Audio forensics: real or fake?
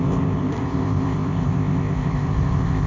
fake